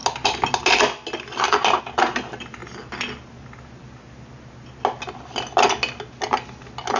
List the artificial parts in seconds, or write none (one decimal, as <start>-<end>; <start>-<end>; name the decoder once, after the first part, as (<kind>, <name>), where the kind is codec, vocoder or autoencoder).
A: none